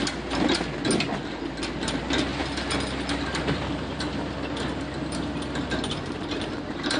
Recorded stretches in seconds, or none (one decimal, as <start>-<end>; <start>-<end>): 0.0-7.0